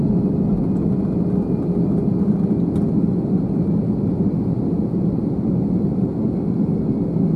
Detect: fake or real real